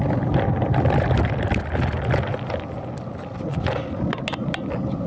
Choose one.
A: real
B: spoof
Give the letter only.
A